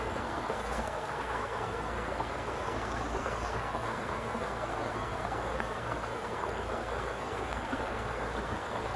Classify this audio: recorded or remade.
remade